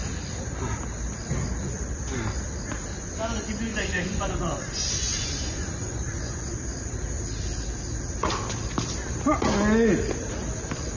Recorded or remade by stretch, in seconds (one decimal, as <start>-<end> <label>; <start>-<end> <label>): 0.0-3.7 recorded; 3.7-6.5 remade; 6.5-11.0 recorded